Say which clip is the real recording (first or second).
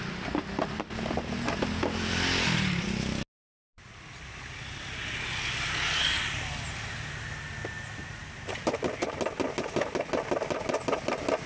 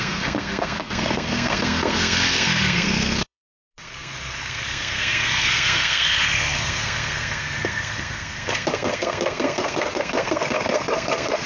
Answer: first